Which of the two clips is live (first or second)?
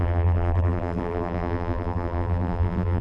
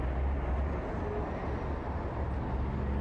second